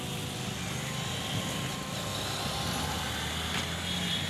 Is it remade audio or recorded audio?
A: recorded